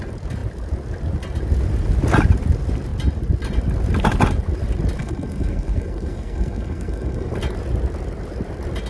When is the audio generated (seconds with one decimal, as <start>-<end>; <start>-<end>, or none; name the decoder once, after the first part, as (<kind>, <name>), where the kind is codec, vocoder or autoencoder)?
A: 5.0-7.3 (codec, SNAC)